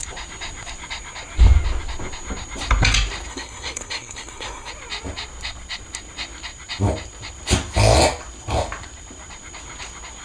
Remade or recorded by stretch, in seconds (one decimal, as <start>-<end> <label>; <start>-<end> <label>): 0.0-3.3 recorded; 3.3-4.7 remade; 4.7-10.2 recorded